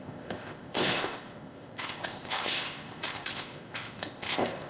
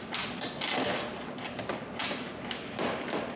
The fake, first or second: first